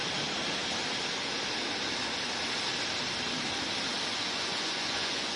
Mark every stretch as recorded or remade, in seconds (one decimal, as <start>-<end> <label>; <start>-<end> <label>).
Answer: 0.0-4.1 recorded; 4.1-5.4 remade